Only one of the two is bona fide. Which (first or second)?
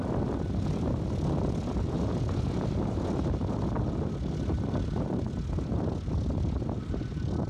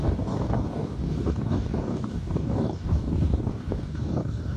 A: first